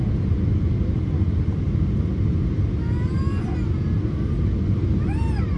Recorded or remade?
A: recorded